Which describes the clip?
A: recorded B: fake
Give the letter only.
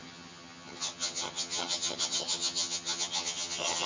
B